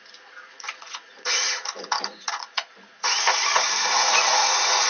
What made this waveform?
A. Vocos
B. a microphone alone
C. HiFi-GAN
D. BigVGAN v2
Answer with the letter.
A